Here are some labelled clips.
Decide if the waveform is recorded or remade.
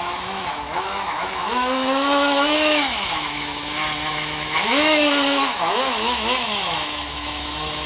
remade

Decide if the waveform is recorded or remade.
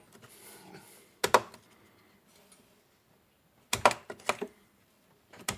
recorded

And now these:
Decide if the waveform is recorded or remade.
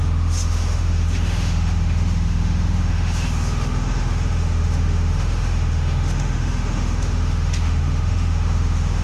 remade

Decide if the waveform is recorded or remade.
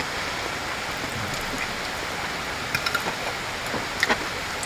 recorded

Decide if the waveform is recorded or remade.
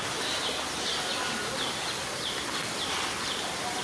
recorded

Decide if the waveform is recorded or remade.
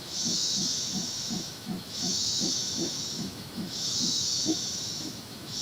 remade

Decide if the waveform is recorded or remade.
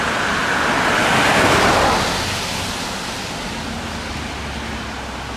recorded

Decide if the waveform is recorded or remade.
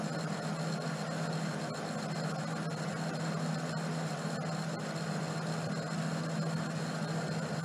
recorded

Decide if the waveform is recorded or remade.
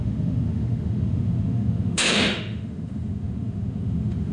remade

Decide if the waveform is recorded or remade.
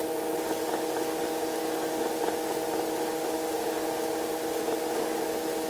recorded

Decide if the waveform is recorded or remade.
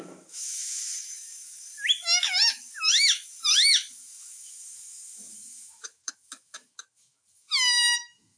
remade